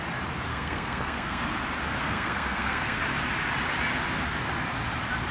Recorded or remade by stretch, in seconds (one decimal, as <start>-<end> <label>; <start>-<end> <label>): 0.0-0.5 recorded; 0.5-1.4 remade; 1.4-2.0 recorded; 2.0-3.0 remade; 3.0-5.3 recorded